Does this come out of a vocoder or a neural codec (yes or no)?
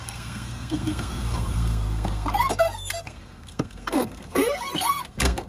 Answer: yes